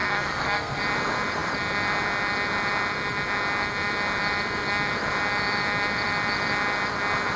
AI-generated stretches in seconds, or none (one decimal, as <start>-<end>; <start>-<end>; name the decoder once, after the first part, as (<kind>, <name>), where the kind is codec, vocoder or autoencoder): 0.0-0.8 (codec, SNAC)